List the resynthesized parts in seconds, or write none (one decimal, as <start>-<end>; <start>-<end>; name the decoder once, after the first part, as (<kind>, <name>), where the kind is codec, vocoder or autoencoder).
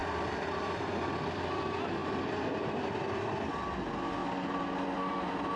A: 0.0-0.6 (vocoder, BigVGAN v2); 2.0-3.7